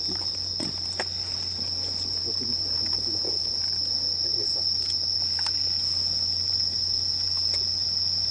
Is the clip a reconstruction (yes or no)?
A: no